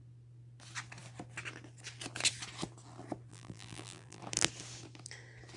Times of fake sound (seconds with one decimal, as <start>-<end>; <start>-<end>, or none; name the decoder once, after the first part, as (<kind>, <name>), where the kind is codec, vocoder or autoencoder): 3.3-4.2 (vocoder, BigVGAN v2)